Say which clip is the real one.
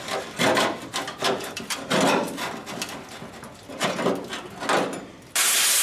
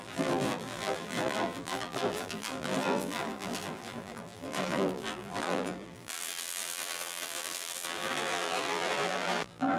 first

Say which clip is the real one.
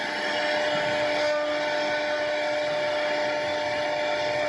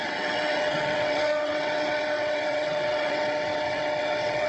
first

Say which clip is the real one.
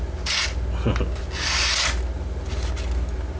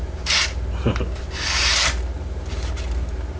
first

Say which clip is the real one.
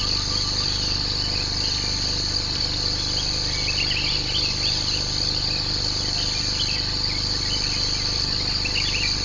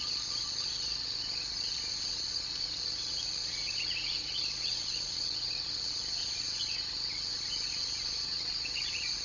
first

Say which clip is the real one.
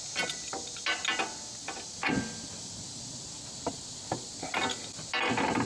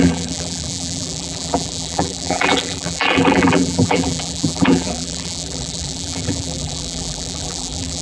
first